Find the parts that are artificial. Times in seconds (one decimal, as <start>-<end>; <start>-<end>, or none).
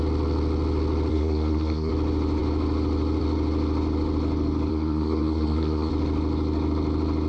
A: 1.1-1.9; 4.7-5.9